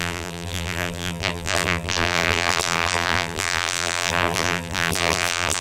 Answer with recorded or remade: remade